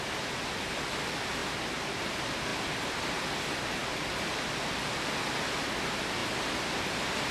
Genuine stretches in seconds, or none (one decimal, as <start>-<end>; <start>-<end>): 0.0-1.4; 2.0-2.5; 3.4-3.8; 4.9-7.3